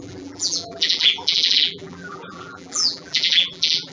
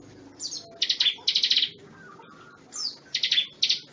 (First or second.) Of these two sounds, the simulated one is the first